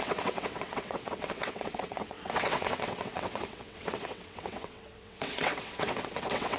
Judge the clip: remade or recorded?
remade